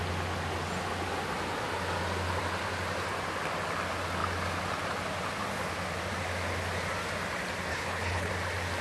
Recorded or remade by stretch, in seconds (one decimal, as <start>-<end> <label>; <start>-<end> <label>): 0.0-7.7 recorded; 7.7-8.3 remade; 8.3-8.8 recorded